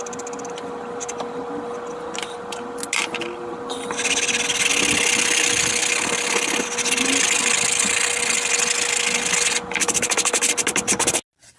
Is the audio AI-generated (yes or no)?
no